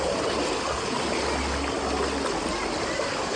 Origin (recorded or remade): recorded